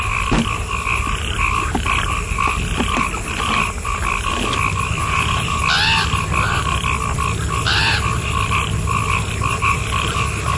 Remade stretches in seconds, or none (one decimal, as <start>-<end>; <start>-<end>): 5.0-5.6